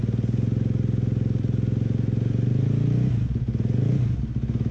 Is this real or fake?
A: real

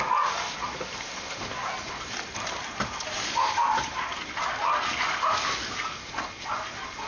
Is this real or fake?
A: real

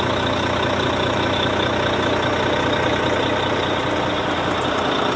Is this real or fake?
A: real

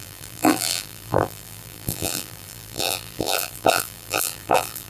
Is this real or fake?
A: fake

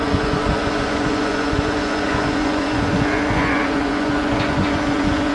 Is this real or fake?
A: fake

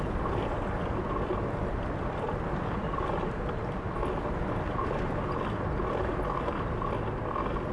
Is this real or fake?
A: real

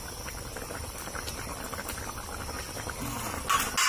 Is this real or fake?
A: real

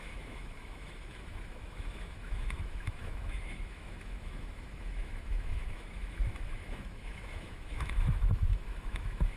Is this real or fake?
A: fake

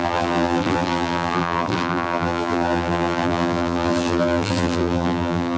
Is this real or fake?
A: fake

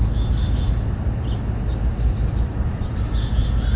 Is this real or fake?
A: real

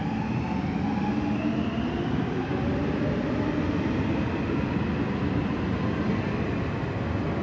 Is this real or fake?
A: real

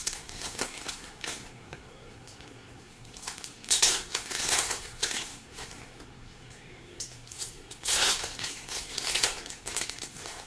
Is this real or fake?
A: fake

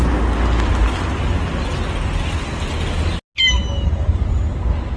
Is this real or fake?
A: real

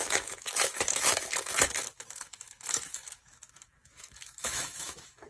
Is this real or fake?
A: fake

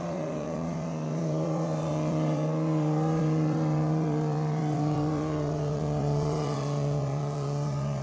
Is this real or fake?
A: fake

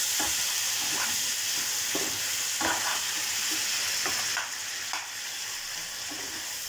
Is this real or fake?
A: real